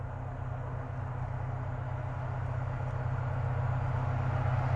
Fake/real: real